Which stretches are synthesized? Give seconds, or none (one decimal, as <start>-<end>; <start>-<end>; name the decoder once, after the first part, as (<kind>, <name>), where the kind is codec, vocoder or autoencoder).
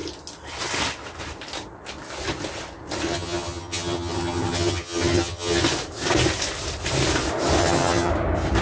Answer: 3.1-5.6 (vocoder, HiFi-GAN); 7.6-8.1